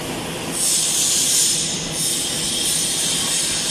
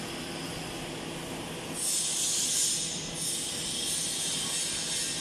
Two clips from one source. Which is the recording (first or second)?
second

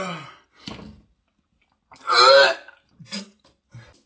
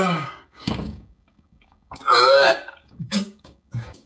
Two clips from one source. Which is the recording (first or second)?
first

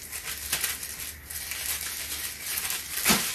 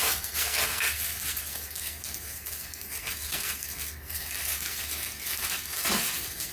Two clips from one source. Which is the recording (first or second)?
first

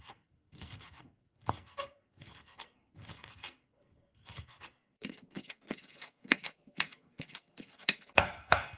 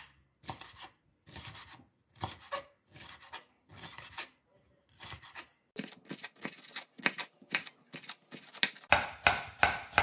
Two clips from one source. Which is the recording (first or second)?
second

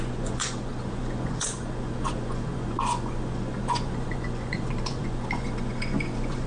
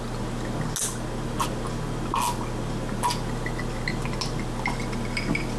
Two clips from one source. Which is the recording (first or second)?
second